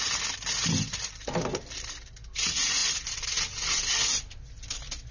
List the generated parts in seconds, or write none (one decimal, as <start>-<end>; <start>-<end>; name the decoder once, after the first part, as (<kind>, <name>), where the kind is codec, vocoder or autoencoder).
none